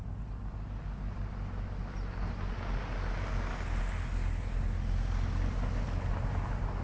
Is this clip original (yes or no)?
yes